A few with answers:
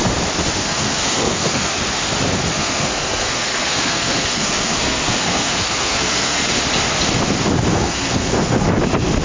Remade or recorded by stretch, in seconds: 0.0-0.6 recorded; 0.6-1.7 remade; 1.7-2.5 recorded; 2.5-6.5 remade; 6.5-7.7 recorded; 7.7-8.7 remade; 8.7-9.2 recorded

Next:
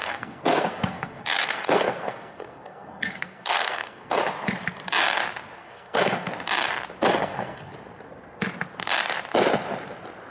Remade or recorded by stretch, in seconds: 0.0-4.2 remade; 4.2-5.6 recorded; 5.6-6.3 remade; 6.3-7.2 recorded; 7.2-7.7 remade; 7.7-10.3 recorded